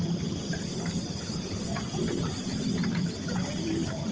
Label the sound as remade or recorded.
remade